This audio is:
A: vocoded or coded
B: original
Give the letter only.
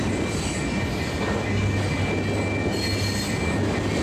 B